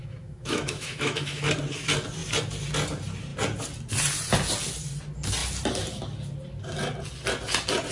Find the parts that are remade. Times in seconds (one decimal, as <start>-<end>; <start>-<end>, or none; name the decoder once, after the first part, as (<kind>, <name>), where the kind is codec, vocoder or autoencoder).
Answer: 0.0-1.4 (autoencoder, DAC-VAE)